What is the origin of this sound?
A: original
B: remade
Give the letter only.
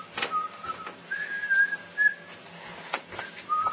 A